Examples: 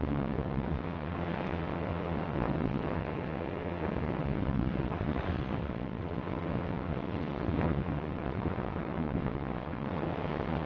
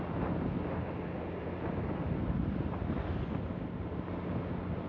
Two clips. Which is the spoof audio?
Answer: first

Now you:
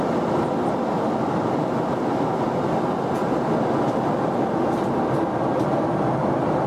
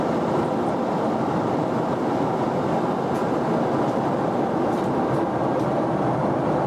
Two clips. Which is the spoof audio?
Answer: second